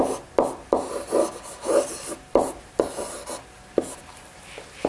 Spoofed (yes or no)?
no